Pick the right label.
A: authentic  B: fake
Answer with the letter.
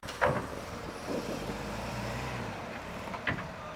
B